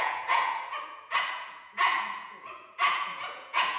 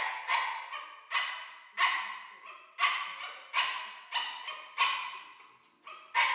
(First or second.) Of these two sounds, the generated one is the first